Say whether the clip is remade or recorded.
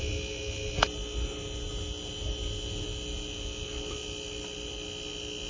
recorded